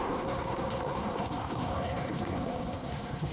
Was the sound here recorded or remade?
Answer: remade